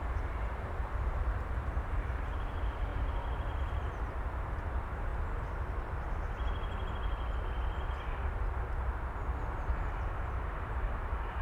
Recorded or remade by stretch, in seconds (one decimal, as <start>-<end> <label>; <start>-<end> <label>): 0.0-5.1 remade; 5.1-10.1 recorded; 10.1-11.4 remade